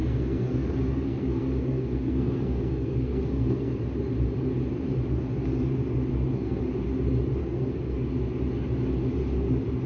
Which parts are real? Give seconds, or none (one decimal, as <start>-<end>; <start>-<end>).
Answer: 3.8-6.1; 6.6-7.4; 8.1-9.9